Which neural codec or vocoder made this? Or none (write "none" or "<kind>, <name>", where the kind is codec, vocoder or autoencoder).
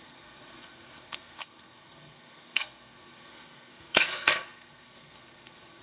codec, SNAC